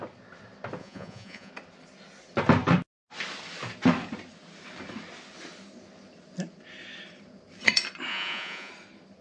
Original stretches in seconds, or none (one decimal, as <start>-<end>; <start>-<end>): 0.0-0.8; 1.5-8.1; 8.7-9.2